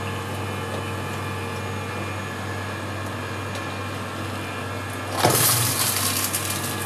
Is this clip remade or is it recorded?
recorded